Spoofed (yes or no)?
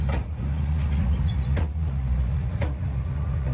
yes